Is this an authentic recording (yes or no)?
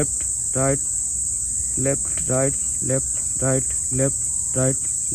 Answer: yes